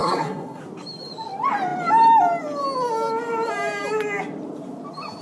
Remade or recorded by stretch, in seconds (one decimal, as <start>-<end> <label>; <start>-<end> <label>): 0.0-0.6 remade; 0.6-5.2 recorded